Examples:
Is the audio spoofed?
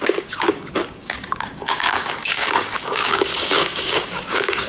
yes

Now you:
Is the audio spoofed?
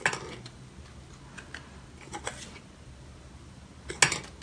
no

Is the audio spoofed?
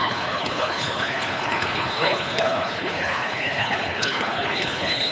yes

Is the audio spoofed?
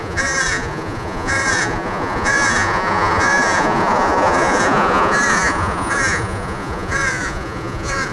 yes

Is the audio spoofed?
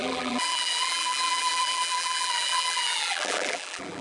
yes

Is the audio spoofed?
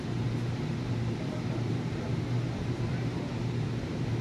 yes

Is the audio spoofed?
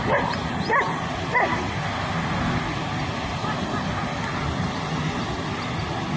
no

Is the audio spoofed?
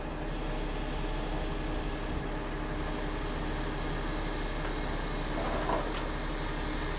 no